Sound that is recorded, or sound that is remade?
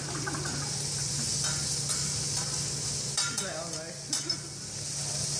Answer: recorded